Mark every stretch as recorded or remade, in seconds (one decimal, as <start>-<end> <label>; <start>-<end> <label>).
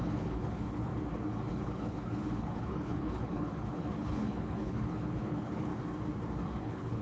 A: 0.0-0.9 remade; 0.9-1.5 recorded; 1.5-5.7 remade; 5.7-6.6 recorded; 6.6-7.0 remade